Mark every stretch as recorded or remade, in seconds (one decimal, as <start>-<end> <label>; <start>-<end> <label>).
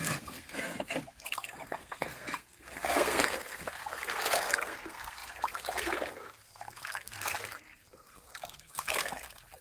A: 0.0-9.6 remade